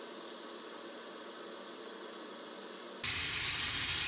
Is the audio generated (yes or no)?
no